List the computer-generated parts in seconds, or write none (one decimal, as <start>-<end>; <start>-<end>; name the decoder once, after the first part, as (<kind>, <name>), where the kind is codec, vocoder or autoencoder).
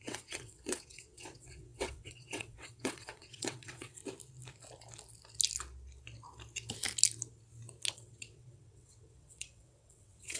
0.0-4.0 (vocoder, WaveNeXt); 7.9-10.4